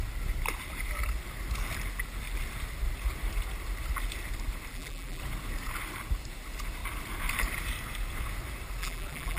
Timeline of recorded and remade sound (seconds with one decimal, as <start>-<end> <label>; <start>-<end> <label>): 0.0-4.7 recorded; 4.7-5.2 remade; 5.2-8.8 recorded; 8.8-9.4 remade